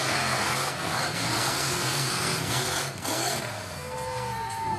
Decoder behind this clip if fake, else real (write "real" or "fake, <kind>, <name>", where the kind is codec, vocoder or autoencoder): fake, codec, SNAC